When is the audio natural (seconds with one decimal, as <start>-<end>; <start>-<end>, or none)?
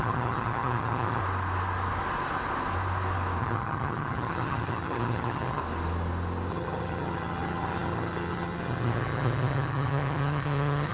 1.2-3.4; 5.6-6.5